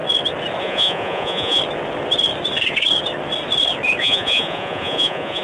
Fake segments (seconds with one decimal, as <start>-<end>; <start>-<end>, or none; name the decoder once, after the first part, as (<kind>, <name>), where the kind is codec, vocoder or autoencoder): 0.6-1.6 (vocoder, Vocos); 4.0-5.4